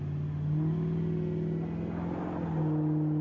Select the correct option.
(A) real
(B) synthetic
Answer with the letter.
A